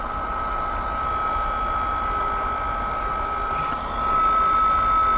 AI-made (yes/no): no